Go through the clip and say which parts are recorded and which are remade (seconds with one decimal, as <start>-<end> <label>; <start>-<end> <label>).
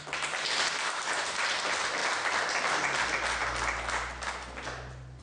0.0-5.2 recorded